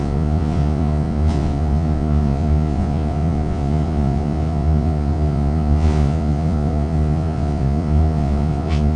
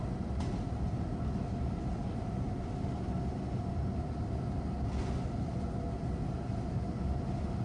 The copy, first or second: first